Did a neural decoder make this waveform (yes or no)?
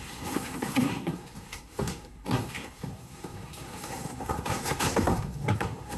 yes